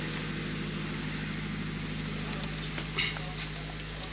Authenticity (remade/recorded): recorded